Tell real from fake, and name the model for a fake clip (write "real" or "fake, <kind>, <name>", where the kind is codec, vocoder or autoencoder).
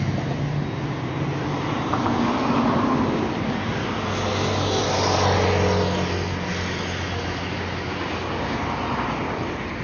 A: real